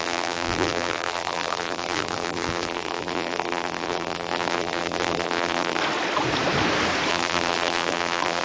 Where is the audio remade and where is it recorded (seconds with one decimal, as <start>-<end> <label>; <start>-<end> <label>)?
0.0-5.8 remade; 5.8-7.1 recorded; 7.1-8.4 remade